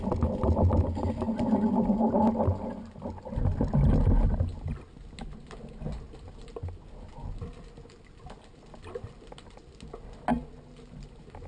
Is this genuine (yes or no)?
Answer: yes